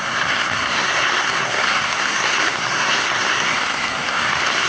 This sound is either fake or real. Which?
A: fake